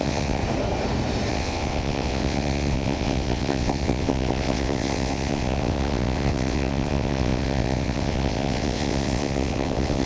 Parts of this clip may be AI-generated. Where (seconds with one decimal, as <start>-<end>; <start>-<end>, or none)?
0.0-0.4; 1.3-10.1